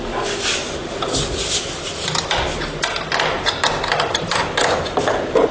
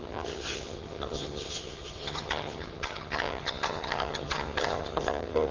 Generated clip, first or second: second